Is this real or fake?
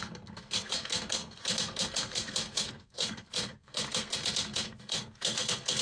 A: fake